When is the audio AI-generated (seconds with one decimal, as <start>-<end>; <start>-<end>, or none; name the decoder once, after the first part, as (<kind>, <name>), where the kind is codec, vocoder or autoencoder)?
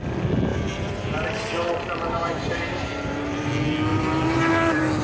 0.5-3.5 (vocoder, BigVGAN v2); 3.9-4.5